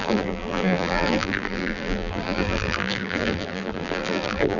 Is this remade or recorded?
remade